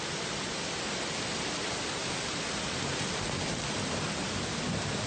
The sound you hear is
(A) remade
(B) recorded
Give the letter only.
B